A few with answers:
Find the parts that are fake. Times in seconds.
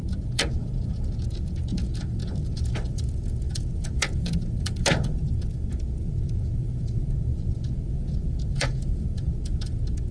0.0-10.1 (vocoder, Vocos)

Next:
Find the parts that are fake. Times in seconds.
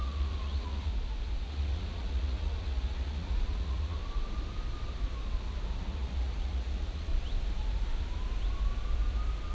0.0-0.9 (vocoder, Vocos); 1.5-4.0; 5.8-7.1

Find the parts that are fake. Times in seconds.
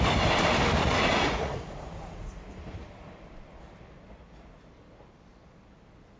0.8-2.5 (vocoder, Vocos)